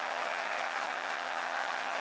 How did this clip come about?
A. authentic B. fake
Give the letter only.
B